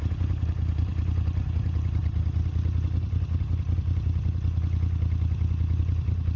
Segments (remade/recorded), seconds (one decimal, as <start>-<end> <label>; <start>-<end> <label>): 0.0-2.0 remade; 2.0-5.8 recorded; 5.8-6.4 remade